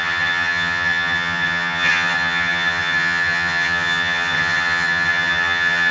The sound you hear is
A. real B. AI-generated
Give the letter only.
B